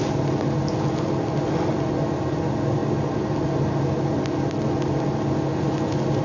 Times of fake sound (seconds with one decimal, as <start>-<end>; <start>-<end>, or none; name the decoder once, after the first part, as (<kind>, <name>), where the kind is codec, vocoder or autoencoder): none